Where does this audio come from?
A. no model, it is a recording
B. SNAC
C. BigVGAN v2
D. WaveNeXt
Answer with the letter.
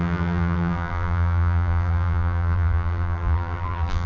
C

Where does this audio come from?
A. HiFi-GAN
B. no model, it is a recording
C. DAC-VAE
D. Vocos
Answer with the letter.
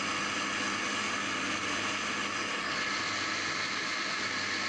B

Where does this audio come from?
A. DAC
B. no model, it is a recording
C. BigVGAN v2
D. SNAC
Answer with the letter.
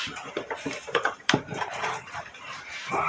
C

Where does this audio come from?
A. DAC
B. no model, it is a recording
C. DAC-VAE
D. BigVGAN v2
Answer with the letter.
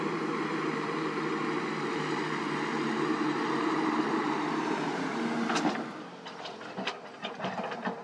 D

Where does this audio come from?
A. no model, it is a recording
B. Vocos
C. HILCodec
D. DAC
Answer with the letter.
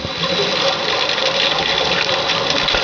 A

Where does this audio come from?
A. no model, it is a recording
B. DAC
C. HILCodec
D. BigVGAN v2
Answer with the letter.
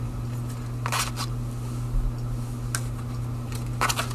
A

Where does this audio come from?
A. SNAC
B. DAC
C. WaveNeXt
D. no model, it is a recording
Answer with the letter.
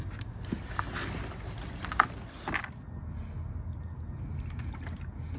D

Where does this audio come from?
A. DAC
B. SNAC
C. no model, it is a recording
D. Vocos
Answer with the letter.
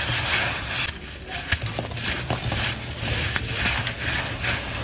C